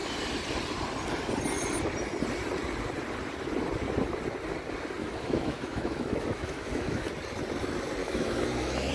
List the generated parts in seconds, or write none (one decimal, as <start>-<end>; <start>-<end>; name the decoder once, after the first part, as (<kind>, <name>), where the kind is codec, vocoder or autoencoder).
5.0-7.1 (autoencoder, DAC-VAE); 8.0-8.9